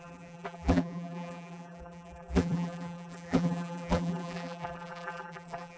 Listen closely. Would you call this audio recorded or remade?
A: remade